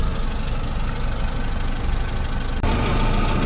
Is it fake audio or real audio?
real